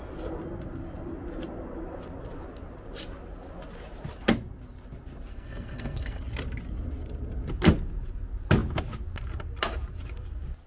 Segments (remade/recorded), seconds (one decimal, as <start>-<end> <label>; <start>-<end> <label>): 0.0-5.3 recorded; 5.3-6.2 remade; 6.2-10.7 recorded